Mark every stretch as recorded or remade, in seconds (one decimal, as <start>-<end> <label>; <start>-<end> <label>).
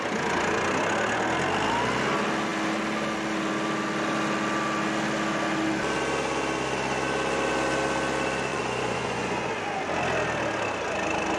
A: 0.0-8.5 recorded; 8.5-9.5 remade; 9.5-11.4 recorded